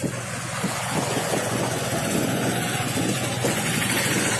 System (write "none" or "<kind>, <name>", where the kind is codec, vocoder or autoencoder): vocoder, Vocos